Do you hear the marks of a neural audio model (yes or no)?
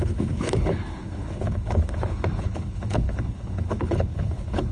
yes